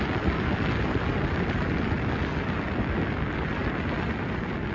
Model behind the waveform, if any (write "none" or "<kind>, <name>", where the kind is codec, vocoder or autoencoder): none